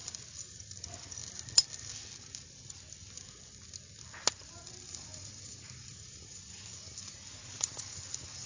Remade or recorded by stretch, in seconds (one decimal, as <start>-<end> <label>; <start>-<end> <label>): 0.0-1.2 remade; 1.2-4.3 recorded; 4.3-8.5 remade